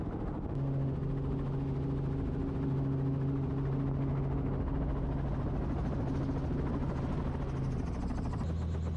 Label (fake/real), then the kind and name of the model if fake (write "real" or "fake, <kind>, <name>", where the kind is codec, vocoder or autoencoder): real